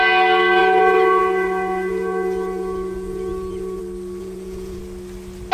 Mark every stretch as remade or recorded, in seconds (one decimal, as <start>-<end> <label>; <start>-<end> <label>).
0.0-0.6 recorded; 0.6-3.8 remade; 3.8-4.2 recorded; 4.2-4.8 remade; 4.8-5.5 recorded